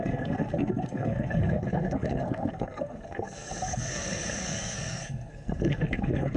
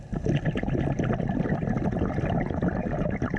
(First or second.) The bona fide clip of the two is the second